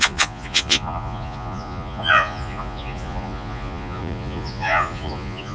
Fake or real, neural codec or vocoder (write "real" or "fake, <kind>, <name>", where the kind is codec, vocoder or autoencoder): fake, vocoder, Vocos